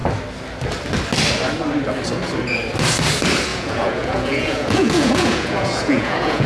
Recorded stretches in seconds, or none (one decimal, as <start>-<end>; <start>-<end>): 0.0-3.5